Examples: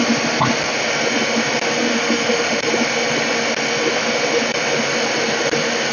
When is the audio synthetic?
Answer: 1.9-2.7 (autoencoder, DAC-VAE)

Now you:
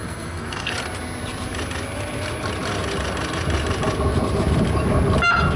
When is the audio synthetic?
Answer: 0.0-0.7 (codec, SNAC)

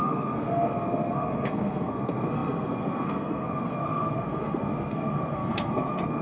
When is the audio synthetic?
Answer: 0.0-6.2 (codec, SNAC)

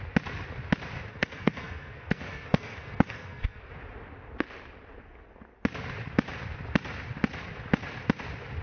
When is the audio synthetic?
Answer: 1.1-3.7 (codec, SNAC)

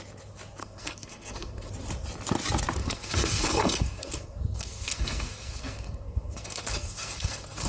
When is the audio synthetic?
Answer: 0.6-1.7 (codec, SNAC); 2.8-7.7

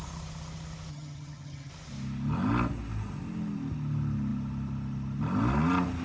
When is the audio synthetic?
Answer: 0.9-1.7 (vocoder, HiFi-GAN)

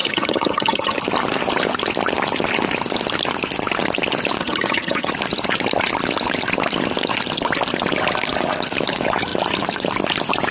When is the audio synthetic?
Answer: 0.0-1.0 (vocoder, HiFi-GAN); 4.4-5.1